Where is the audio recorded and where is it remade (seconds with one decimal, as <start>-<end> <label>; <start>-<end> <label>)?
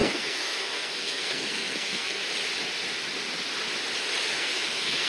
0.0-2.2 remade; 2.2-4.3 recorded; 4.3-5.1 remade